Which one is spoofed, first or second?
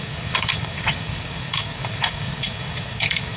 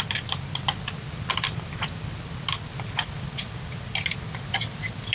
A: first